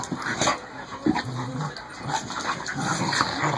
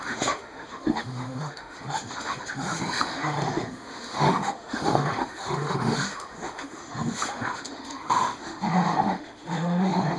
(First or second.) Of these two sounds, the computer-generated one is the second